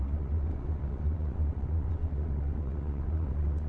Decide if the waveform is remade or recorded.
remade